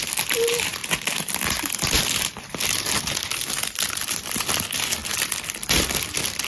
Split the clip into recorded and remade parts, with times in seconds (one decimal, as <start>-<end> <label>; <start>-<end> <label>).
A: 0.0-6.5 recorded